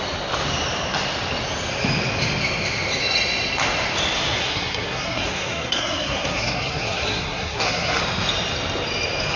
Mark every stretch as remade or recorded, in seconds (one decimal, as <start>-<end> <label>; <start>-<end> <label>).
0.0-4.4 recorded; 4.4-8.0 remade; 8.0-9.4 recorded